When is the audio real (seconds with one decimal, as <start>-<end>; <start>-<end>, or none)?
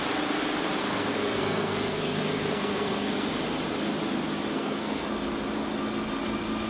0.0-0.8; 3.3-4.5; 5.1-6.7